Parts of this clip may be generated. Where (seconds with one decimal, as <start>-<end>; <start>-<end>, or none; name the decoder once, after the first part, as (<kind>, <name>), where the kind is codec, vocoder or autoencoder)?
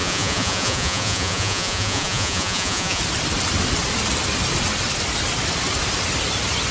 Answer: 0.0-3.0 (vocoder, Vocos)